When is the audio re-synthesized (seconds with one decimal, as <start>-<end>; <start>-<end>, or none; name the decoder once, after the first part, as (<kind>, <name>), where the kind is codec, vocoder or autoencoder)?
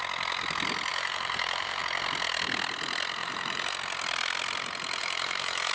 0.9-1.8 (vocoder, BigVGAN v2); 3.2-3.7; 5.0-5.7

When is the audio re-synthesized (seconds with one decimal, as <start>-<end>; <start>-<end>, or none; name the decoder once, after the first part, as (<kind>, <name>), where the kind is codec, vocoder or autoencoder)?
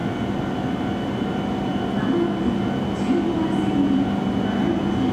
none